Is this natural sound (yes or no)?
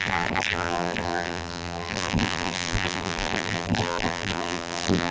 no